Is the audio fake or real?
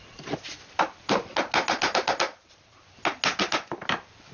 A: real